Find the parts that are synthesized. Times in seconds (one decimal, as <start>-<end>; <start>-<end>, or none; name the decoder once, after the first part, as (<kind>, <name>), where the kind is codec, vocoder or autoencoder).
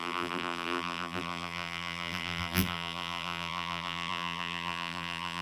0.0-5.4 (vocoder, BigVGAN v2)